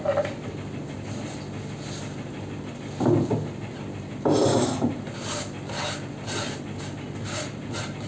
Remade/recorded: recorded